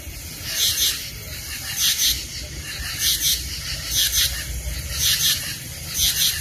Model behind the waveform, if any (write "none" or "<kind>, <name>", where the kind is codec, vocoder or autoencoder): none